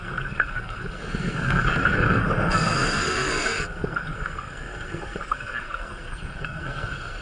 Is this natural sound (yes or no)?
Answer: no